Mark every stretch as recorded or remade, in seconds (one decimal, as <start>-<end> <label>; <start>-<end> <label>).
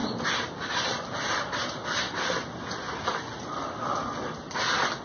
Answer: 0.0-3.0 recorded; 3.0-4.0 remade; 4.0-4.5 recorded; 4.5-5.0 remade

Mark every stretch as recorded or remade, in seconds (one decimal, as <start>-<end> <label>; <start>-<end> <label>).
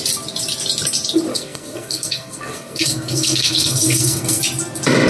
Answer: 0.0-1.3 recorded; 1.3-4.4 remade; 4.4-5.1 recorded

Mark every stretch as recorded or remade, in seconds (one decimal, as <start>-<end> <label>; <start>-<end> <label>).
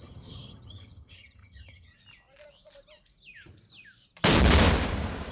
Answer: 0.0-1.9 remade; 1.9-5.3 recorded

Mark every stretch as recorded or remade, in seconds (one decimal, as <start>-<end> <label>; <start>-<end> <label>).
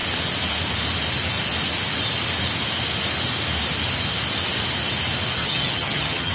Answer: 0.0-5.4 recorded; 5.4-6.3 remade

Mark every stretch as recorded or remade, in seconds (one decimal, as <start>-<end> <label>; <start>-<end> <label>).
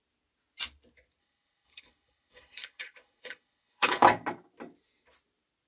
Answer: 0.0-1.2 recorded; 1.2-4.0 remade; 4.0-5.7 recorded